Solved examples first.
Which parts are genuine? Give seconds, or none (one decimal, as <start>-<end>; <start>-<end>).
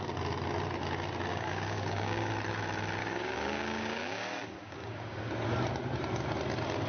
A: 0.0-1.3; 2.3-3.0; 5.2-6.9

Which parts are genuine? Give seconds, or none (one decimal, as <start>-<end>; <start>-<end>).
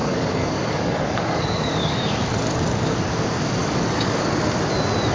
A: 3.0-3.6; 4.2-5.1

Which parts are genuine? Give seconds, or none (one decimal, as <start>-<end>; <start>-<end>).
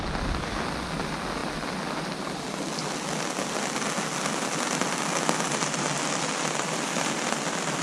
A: 0.0-7.8